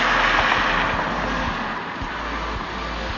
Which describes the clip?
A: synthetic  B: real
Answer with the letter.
B